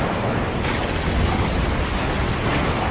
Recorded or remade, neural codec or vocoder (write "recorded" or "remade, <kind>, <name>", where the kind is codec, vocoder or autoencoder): recorded